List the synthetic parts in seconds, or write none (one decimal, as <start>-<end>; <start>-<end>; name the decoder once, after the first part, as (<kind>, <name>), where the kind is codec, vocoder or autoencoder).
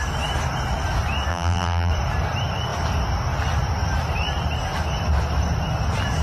1.3-1.9 (vocoder, BigVGAN v2)